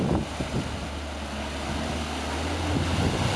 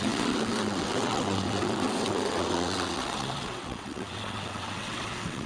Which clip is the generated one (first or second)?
second